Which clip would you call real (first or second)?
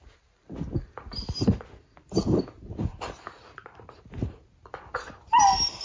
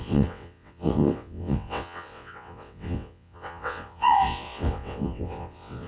first